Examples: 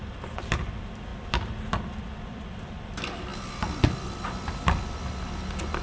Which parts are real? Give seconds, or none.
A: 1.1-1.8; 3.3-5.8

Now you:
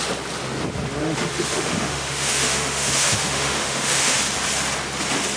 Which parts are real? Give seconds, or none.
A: 0.0-1.0; 4.2-5.4